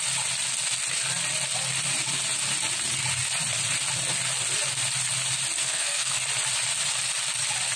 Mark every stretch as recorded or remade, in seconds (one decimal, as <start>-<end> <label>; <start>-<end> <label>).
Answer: 0.0-5.6 recorded; 5.6-6.2 remade; 6.2-7.8 recorded